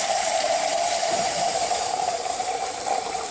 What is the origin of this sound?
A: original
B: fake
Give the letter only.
B